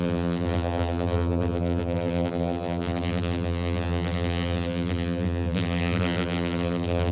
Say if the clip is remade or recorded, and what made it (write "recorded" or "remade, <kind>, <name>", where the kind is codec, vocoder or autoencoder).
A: remade, vocoder, BigVGAN v2